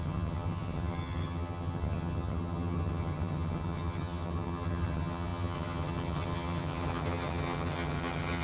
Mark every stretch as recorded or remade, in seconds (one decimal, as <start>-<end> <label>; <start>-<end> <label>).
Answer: 0.0-8.4 remade